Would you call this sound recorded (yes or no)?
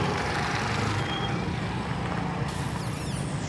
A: yes